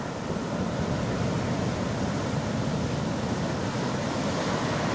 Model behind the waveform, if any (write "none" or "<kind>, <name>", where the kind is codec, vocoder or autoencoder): none